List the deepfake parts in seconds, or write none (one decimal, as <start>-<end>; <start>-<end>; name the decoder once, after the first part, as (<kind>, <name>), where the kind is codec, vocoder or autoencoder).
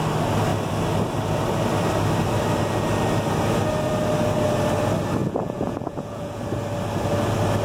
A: 5.2-6.4 (vocoder, Vocos)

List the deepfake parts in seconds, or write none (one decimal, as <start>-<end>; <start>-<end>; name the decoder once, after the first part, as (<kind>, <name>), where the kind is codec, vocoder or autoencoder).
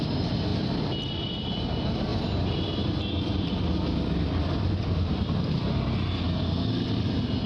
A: 0.5-1.4 (vocoder, BigVGAN v2); 2.1-5.8